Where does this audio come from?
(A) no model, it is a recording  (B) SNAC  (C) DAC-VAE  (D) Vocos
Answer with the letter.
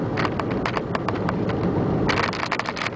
A